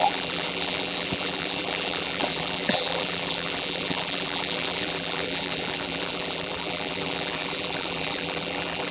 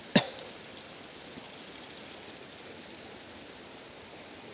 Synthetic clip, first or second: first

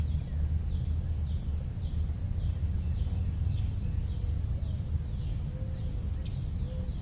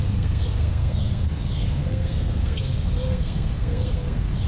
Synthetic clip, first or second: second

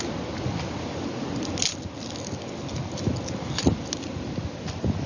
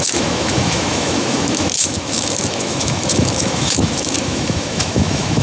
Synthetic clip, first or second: second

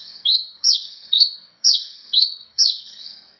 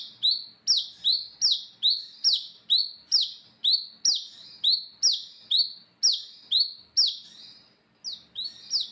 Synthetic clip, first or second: first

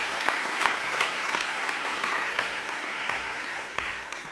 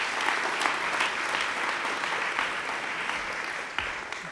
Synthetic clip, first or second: first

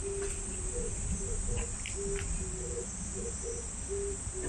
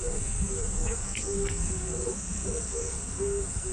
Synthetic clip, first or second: second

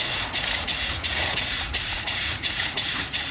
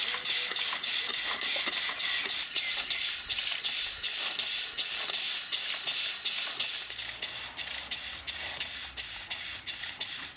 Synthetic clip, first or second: first